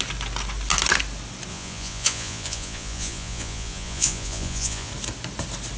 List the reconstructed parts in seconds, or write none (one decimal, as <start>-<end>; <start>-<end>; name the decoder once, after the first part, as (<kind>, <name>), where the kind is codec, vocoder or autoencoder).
1.5-4.9 (vocoder, Vocos)